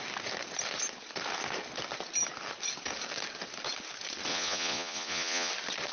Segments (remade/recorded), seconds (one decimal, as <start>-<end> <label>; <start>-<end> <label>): 0.0-4.3 recorded; 4.3-5.5 remade; 5.5-5.9 recorded